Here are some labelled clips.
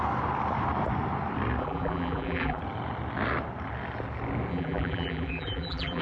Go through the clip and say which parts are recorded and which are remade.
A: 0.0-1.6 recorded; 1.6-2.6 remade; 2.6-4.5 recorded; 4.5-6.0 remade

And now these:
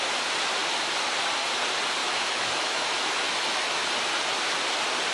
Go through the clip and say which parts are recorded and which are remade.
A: 0.0-2.0 recorded; 2.0-3.9 remade; 3.9-5.1 recorded

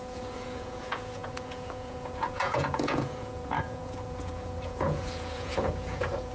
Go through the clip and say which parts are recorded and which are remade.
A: 0.0-6.3 remade

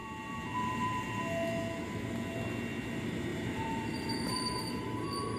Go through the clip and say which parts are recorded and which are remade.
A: 0.0-1.2 remade; 1.2-3.3 recorded; 3.3-4.7 remade; 4.7-5.4 recorded

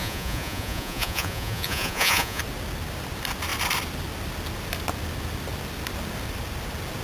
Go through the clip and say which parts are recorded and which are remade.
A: 0.0-2.4 remade; 2.4-7.0 recorded

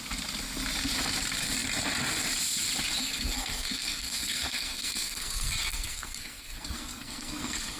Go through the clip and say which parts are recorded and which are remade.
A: 0.0-3.0 recorded; 3.0-7.8 remade

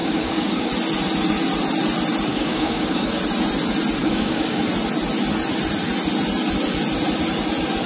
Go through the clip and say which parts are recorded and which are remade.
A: 0.0-0.7 remade; 0.7-2.3 recorded; 2.3-3.2 remade; 3.2-4.0 recorded; 4.0-4.6 remade; 4.6-7.9 recorded